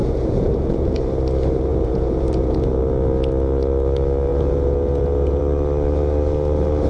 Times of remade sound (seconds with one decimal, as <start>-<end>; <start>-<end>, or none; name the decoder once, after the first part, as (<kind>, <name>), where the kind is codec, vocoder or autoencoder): 0.0-1.0 (vocoder, Vocos); 1.7-2.7; 4.3-5.4

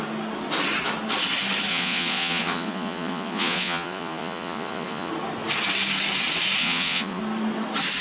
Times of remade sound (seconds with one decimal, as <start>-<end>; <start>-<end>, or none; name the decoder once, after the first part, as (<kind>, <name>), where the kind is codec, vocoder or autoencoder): 1.7-5.1 (vocoder, Vocos); 6.6-7.2